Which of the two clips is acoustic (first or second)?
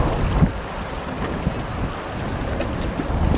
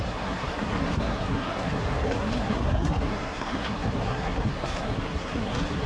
first